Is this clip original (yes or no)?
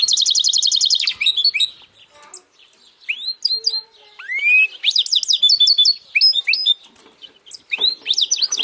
yes